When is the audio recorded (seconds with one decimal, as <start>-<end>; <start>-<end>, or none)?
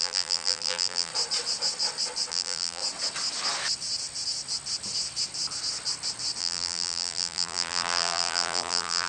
1.1-2.3; 2.8-6.4